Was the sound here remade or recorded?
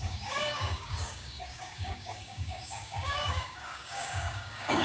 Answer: remade